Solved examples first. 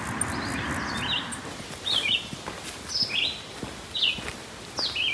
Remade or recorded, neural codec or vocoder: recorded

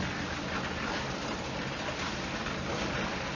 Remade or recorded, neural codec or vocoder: recorded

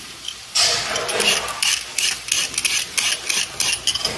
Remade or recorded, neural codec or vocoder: recorded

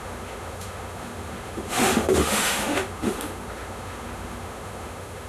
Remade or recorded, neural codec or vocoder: remade, autoencoder, DAC-VAE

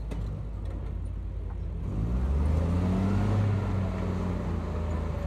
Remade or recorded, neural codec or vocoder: recorded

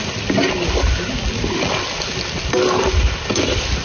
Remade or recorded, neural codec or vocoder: recorded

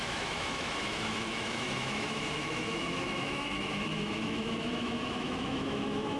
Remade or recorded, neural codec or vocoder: remade, autoencoder, DAC-VAE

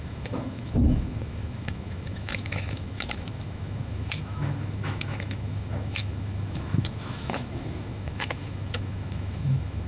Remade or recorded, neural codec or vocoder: remade, autoencoder, DAC-VAE